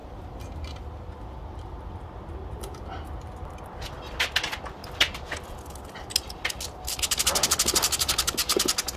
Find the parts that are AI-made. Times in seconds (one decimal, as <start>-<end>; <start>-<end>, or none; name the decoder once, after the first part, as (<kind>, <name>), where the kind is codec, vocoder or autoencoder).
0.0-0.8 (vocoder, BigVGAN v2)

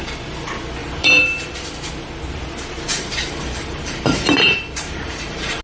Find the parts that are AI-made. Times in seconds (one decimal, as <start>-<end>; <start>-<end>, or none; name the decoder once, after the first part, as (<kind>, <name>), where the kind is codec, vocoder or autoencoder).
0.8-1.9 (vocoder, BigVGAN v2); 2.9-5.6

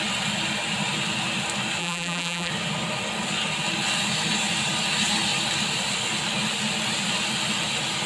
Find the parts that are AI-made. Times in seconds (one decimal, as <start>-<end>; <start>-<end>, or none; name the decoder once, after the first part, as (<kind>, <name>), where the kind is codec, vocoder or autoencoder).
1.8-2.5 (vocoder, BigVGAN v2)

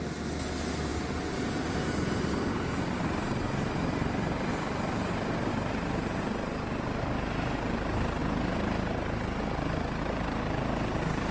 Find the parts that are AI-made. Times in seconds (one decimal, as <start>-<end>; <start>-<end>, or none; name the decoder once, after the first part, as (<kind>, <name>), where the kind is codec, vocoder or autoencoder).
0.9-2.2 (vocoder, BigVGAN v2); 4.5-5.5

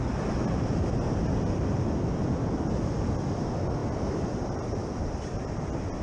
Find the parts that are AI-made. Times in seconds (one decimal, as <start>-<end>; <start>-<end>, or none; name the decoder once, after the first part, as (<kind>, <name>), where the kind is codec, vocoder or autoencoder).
3.8-5.6 (vocoder, BigVGAN v2)

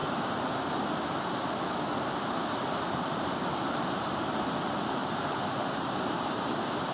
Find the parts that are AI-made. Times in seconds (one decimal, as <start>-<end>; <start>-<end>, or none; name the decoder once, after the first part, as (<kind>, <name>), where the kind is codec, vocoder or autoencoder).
0.0-1.0 (vocoder, BigVGAN v2); 3.5-4.5; 5.0-6.5

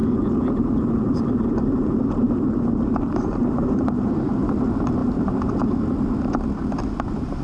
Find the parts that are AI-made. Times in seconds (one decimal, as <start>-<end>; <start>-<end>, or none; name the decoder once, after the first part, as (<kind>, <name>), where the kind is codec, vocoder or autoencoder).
0.0-4.3 (vocoder, BigVGAN v2); 5.0-5.7

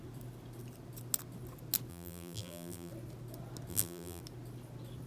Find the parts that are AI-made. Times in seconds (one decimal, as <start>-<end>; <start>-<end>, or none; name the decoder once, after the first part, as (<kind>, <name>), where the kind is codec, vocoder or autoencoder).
1.9-2.9 (vocoder, BigVGAN v2); 3.7-4.2